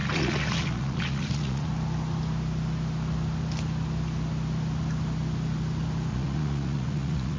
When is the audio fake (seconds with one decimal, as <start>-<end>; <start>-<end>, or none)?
0.0-1.7; 6.1-7.4